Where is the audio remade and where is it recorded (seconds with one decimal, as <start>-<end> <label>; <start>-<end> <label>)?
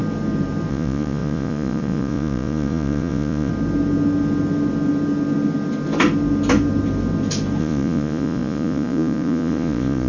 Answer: 0.0-0.7 recorded; 0.7-3.5 remade; 3.5-7.6 recorded; 7.6-10.1 remade